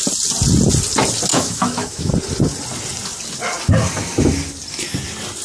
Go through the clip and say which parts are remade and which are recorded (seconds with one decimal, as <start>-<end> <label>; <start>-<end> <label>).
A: 0.0-1.3 recorded; 1.3-2.1 remade; 2.1-5.4 recorded